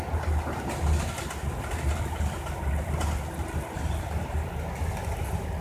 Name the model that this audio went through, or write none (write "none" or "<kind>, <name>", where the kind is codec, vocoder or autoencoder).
none